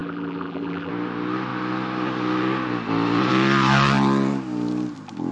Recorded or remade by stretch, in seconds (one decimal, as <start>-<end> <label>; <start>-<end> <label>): 0.0-0.9 remade; 0.9-5.3 recorded